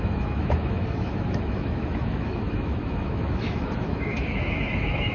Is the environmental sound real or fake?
fake